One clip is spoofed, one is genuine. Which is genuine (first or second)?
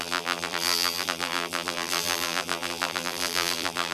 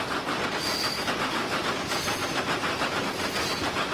second